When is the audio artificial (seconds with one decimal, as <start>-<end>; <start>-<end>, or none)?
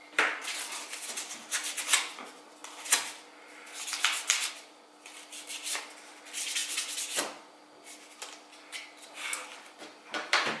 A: none